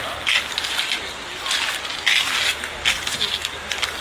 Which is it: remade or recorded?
recorded